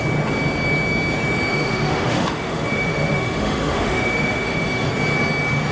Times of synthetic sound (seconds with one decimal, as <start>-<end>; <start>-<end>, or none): 1.5-4.9